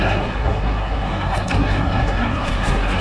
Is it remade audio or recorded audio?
remade